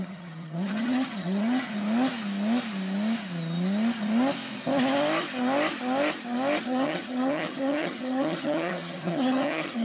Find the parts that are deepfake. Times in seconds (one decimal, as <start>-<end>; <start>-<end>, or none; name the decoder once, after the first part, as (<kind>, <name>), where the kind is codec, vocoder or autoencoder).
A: 0.0-1.7 (vocoder, HiFi-GAN); 6.6-9.8